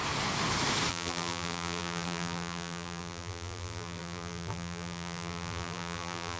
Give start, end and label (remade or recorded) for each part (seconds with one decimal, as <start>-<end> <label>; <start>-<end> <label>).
0.0-0.9 recorded; 0.9-6.4 remade